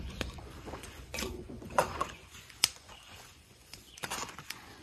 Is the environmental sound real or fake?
fake